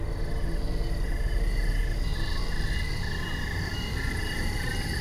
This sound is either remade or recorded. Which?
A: recorded